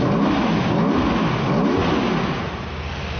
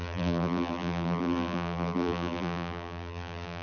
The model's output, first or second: second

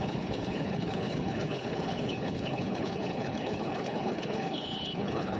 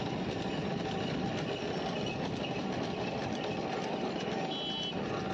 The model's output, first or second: first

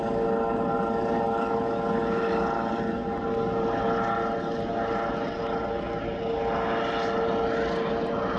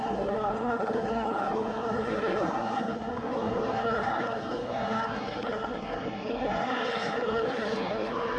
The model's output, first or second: second